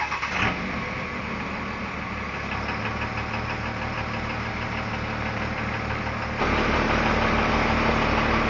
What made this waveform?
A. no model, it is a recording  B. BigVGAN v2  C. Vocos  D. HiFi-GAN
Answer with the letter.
A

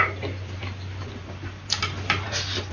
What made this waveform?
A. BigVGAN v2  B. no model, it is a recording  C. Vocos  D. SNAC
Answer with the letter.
B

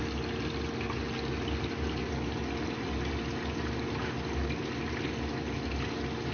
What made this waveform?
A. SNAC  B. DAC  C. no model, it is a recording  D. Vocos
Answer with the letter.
C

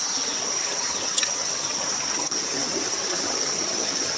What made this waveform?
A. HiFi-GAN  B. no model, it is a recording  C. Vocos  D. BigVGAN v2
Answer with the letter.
A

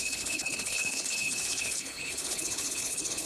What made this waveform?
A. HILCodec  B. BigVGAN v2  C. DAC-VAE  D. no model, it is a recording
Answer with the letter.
A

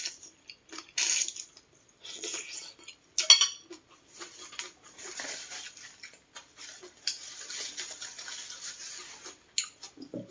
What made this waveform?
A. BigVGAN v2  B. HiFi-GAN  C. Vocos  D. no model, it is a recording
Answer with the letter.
D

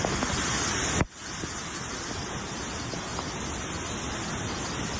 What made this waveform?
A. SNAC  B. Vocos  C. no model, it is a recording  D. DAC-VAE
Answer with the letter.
C